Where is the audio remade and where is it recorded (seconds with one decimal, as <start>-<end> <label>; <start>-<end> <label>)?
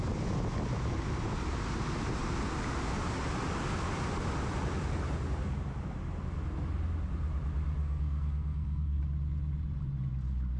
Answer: 0.0-7.8 recorded; 7.8-9.0 remade; 9.0-10.6 recorded